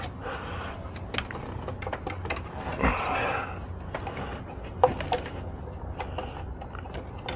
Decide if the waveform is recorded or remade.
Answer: recorded